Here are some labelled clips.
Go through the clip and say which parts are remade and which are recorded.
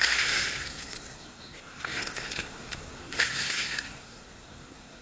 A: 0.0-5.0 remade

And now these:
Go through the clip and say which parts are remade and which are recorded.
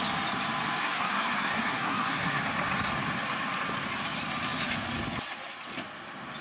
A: 0.0-0.8 recorded; 0.8-2.4 remade; 2.4-6.4 recorded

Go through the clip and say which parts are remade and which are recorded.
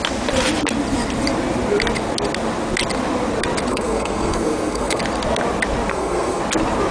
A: 0.0-3.7 recorded; 3.7-5.0 remade; 5.0-5.9 recorded; 5.9-6.4 remade; 6.4-6.9 recorded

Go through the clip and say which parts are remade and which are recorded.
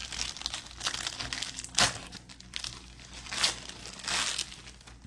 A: 0.0-5.1 recorded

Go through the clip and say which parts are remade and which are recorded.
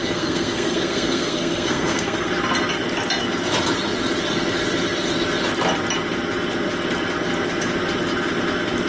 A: 0.0-2.3 remade; 2.3-8.9 recorded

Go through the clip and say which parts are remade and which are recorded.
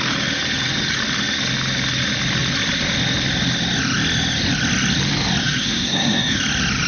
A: 0.0-5.4 recorded; 5.4-6.4 remade; 6.4-6.9 recorded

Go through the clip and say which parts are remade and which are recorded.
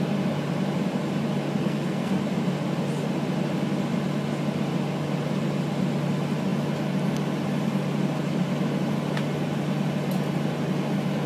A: 0.0-1.6 recorded; 1.6-2.2 remade; 2.2-11.3 recorded